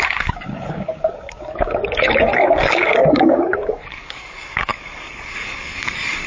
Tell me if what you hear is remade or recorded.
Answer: remade